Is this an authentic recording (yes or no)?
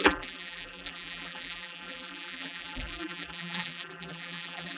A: no